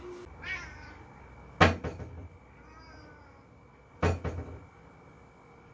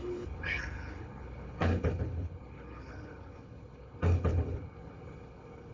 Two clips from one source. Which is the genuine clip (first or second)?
first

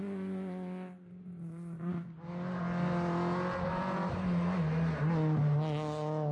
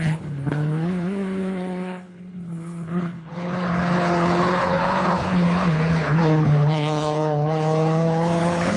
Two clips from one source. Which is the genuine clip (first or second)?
first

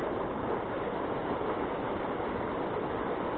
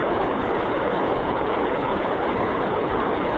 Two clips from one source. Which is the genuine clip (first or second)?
first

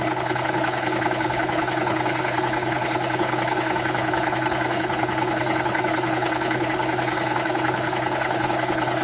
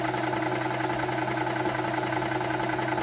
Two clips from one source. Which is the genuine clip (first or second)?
second